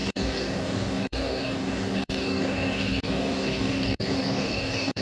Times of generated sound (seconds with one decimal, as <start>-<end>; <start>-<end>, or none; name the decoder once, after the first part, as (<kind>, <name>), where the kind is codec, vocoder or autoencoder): 0.0-5.0 (codec, DAC)